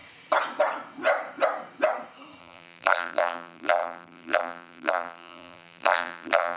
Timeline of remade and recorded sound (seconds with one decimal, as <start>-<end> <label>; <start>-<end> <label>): 0.0-2.4 recorded; 2.4-6.6 remade